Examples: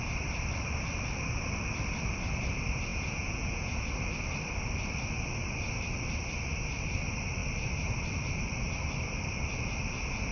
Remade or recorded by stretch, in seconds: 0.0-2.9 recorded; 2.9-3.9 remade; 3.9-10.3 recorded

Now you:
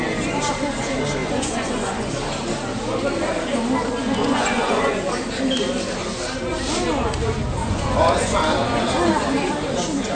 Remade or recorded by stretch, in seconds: 0.0-1.2 recorded; 1.2-2.1 remade; 2.1-4.2 recorded; 4.2-5.0 remade; 5.0-7.6 recorded; 7.6-8.4 remade; 8.4-10.1 recorded

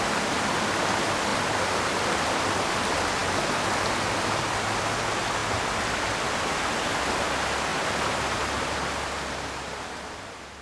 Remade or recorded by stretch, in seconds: 0.0-10.6 recorded